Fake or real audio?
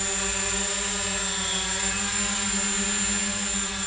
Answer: real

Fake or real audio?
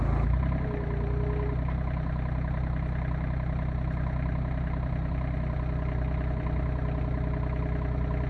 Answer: real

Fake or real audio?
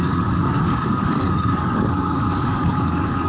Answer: fake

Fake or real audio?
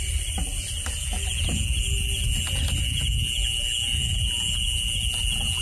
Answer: real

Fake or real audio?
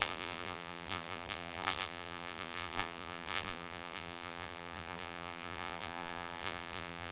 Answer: fake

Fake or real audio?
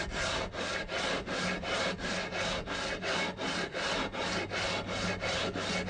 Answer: real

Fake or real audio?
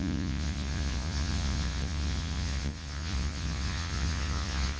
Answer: fake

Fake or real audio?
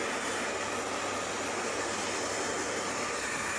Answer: real